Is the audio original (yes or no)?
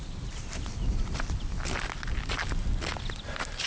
yes